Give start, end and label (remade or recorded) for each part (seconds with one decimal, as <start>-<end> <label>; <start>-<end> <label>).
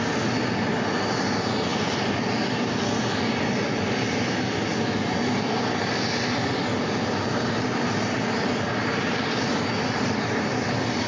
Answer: 0.0-11.1 recorded